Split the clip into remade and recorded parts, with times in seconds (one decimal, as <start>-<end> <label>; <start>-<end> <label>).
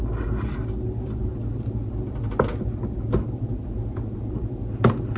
0.0-5.2 recorded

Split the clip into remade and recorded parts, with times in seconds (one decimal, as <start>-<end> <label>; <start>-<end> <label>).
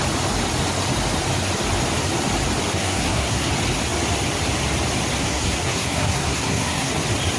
0.0-2.7 recorded; 2.7-3.5 remade; 3.5-5.2 recorded; 5.2-6.9 remade; 6.9-7.4 recorded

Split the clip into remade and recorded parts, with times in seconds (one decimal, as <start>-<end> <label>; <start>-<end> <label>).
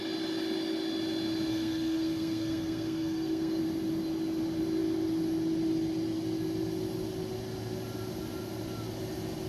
0.0-1.5 recorded; 1.5-3.6 remade; 3.6-9.5 recorded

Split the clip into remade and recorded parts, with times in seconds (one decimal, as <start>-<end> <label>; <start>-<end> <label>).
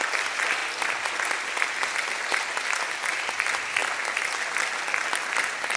0.0-5.8 recorded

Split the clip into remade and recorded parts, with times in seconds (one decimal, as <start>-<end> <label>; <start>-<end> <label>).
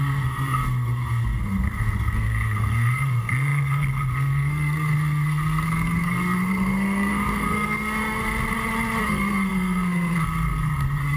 0.0-8.2 remade; 8.2-9.0 recorded; 9.0-11.2 remade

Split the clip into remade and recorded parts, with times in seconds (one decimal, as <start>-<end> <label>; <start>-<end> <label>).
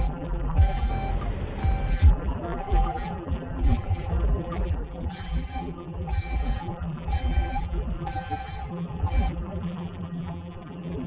0.0-0.9 remade; 0.9-1.9 recorded; 1.9-11.1 remade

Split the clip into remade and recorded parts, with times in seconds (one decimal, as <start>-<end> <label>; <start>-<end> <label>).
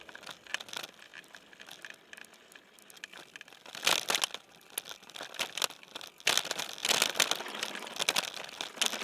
0.0-9.0 recorded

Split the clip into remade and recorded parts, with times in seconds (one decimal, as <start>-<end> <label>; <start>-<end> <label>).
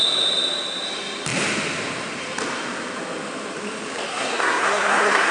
0.0-4.1 recorded; 4.1-5.3 remade